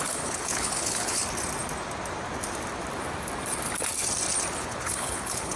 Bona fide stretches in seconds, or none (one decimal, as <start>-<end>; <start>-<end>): 1.2-4.6